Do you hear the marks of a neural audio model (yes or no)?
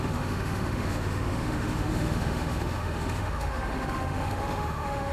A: yes